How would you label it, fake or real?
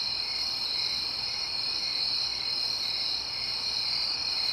real